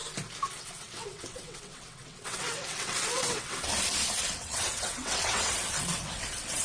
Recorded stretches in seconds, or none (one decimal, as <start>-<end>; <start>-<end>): 0.0-0.5; 3.7-4.2